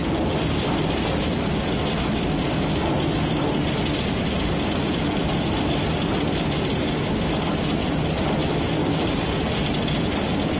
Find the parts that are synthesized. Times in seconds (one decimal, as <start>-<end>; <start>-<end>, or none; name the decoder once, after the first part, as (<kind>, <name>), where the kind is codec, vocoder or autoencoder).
8.8-9.3 (codec, DAC)